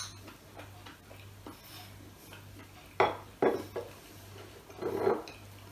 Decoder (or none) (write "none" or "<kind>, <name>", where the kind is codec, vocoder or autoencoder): none